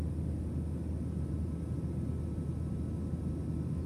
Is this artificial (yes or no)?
no